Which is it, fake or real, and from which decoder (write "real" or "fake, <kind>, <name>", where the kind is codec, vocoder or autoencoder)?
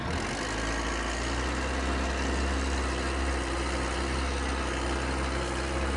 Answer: real